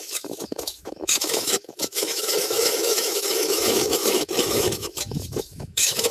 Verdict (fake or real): fake